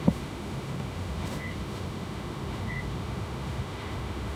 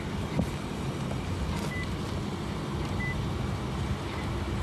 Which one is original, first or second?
second